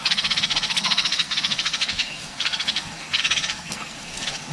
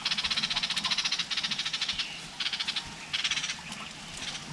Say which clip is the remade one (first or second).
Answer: first